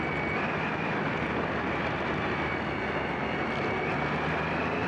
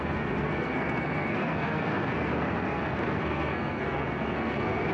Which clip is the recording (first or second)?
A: first